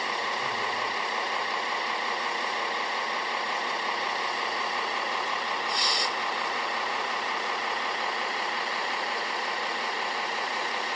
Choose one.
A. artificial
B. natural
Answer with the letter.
A